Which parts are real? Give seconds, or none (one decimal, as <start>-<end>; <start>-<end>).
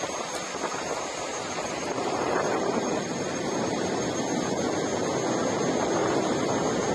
0.0-1.4; 4.2-6.0; 6.5-6.9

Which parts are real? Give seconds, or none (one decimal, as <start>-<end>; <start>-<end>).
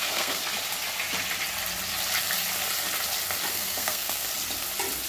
0.4-3.5; 4.3-5.1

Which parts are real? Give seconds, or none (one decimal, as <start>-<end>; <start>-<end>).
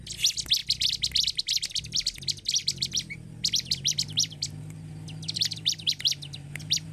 0.0-6.9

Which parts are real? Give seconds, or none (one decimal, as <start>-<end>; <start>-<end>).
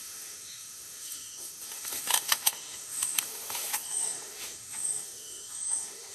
none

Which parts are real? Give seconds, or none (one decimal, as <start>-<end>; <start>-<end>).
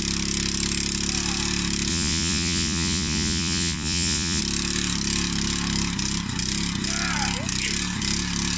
0.0-1.9; 4.4-8.6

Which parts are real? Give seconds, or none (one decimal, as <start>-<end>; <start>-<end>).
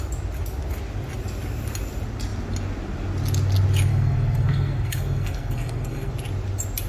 0.0-3.9; 6.1-6.9